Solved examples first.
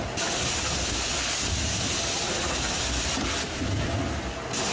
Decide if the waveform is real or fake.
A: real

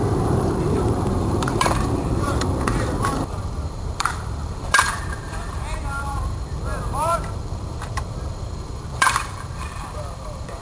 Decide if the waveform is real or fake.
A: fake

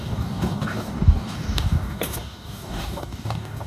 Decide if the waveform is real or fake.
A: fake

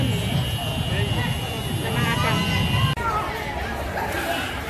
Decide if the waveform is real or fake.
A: real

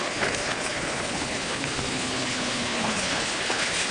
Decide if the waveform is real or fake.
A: fake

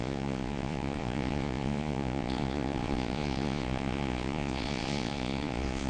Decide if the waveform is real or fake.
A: fake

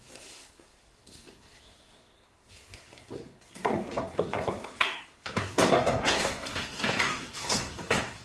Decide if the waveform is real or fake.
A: fake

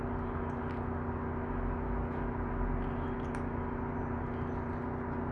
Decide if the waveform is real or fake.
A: real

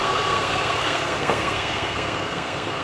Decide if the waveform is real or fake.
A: fake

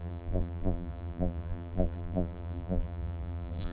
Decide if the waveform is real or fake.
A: fake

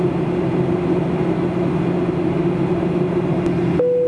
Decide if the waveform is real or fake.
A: real